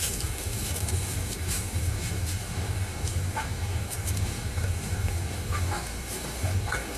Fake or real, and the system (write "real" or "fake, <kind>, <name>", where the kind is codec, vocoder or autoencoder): fake, codec, DAC